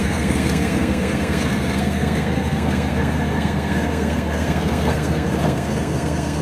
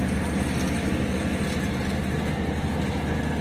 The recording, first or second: second